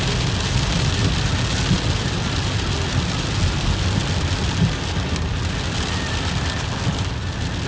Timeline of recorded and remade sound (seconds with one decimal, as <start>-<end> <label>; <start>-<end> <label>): 0.0-7.7 recorded